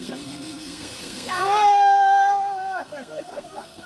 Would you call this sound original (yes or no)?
no